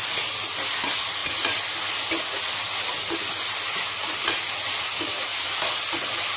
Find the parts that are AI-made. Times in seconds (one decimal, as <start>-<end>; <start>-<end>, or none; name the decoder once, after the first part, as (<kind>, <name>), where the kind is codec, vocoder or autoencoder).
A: none